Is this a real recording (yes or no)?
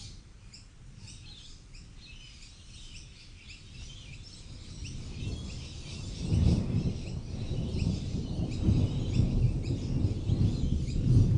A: yes